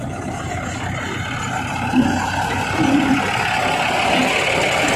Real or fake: real